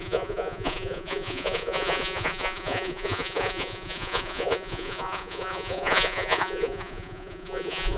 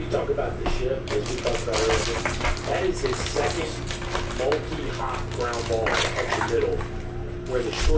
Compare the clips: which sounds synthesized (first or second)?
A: first